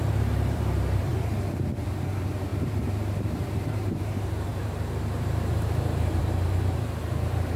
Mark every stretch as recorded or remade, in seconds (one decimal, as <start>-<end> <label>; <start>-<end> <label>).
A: 0.0-1.1 remade; 1.1-1.8 recorded; 1.8-7.6 remade